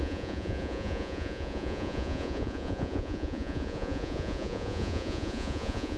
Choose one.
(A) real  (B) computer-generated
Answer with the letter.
B